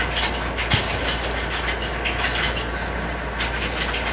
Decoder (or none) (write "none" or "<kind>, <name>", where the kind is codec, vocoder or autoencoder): none